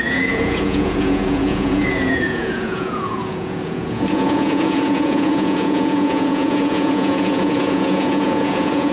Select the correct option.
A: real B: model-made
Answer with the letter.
B